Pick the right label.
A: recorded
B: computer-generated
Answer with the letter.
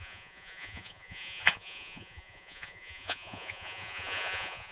B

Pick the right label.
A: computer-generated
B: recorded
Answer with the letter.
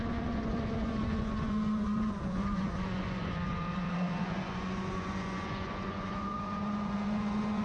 A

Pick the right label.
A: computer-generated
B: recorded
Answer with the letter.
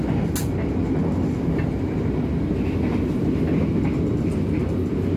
B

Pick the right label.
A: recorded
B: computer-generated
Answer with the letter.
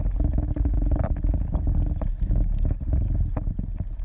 A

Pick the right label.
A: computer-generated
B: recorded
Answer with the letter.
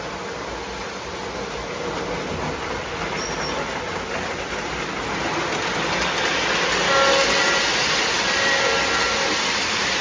B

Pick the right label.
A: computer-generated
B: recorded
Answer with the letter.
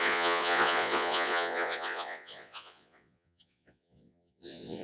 A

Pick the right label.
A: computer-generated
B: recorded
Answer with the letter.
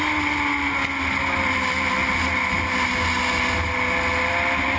B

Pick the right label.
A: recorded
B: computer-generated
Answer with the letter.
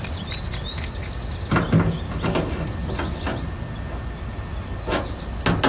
A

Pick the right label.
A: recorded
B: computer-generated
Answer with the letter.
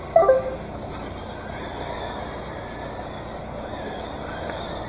A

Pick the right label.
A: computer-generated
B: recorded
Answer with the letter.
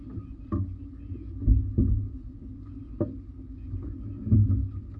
B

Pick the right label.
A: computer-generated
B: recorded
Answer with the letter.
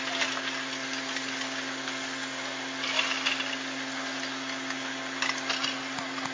B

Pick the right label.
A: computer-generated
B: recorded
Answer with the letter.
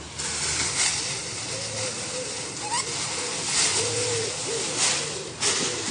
B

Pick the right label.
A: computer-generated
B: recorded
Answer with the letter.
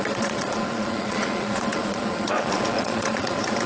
A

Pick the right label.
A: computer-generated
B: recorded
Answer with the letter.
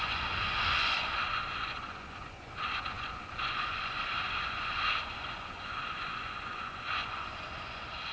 A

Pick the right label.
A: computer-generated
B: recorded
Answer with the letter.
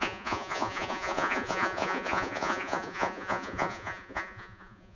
A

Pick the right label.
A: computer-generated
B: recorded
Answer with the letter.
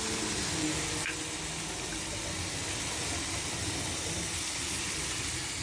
B